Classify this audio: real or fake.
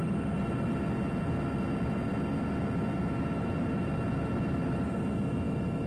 real